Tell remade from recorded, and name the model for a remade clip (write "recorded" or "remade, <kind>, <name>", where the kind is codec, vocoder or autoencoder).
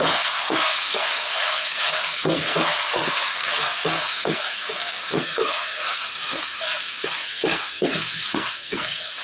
remade, codec, SNAC